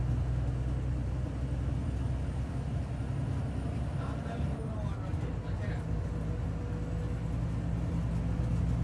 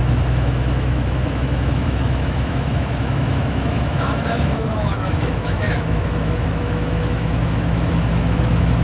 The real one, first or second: first